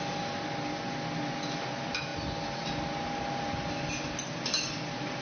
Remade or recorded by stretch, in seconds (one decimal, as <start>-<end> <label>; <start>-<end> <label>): 0.0-5.2 recorded